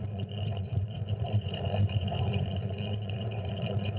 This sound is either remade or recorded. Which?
remade